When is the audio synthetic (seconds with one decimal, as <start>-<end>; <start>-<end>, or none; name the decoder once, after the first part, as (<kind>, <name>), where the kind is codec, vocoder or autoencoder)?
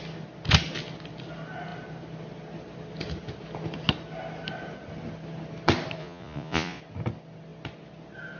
6.0-6.8 (vocoder, Vocos)